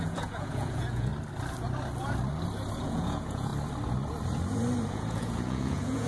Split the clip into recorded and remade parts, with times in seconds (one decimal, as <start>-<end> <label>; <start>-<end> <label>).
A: 0.0-1.1 remade; 1.1-2.8 recorded; 2.8-3.5 remade; 3.5-4.9 recorded; 4.9-6.1 remade